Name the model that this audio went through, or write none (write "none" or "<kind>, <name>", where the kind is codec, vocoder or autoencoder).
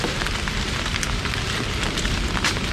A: none